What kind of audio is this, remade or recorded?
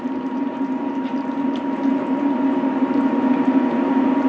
remade